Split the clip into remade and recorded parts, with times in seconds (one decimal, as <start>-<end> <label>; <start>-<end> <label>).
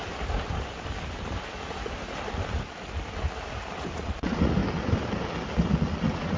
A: 0.0-3.8 recorded; 3.8-4.6 remade; 4.6-6.0 recorded; 6.0-6.4 remade